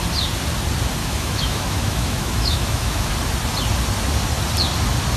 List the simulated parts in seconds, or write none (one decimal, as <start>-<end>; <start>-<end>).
1.0-3.1